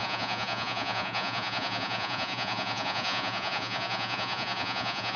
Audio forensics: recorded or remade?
remade